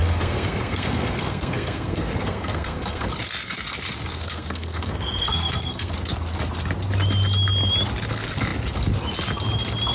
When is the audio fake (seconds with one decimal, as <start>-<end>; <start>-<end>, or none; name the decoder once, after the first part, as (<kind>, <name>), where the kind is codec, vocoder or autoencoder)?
0.0-3.1 (codec, SNAC); 4.1-5.9